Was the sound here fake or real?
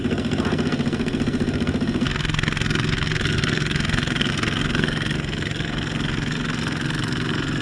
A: fake